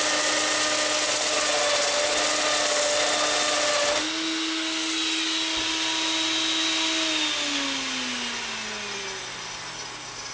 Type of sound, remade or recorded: recorded